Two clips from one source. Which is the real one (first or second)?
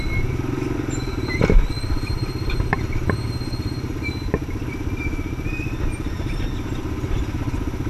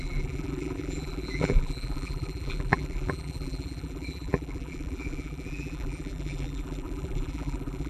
first